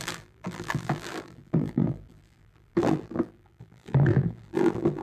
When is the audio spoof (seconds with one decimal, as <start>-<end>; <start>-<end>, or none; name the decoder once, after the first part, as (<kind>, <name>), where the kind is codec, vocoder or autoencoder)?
0.0-5.0 (vocoder, BigVGAN v2)